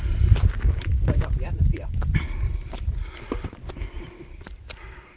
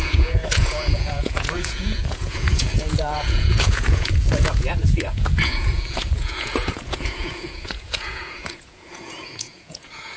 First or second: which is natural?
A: first